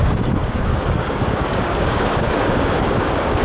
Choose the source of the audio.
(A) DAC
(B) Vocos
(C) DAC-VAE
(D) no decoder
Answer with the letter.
A